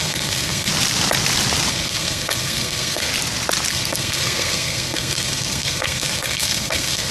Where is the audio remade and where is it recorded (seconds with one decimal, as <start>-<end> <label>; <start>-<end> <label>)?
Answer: 0.0-0.7 remade; 0.7-1.7 recorded; 1.7-3.1 remade; 3.1-3.7 recorded; 3.7-7.1 remade